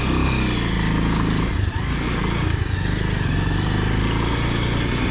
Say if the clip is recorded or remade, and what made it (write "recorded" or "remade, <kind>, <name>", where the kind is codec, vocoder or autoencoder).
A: recorded